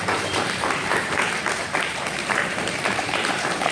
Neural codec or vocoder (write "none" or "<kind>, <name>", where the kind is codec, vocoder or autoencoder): vocoder, BigVGAN v2